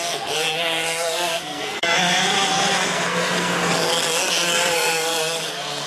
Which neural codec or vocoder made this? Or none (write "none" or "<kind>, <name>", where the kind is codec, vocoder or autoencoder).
codec, SNAC